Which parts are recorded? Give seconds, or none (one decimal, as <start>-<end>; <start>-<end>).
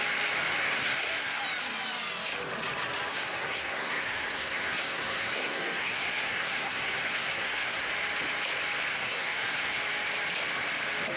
0.0-0.6; 1.4-3.1; 7.9-8.9; 9.8-11.2